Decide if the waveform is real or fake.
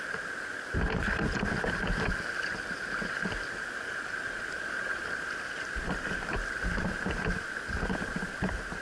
real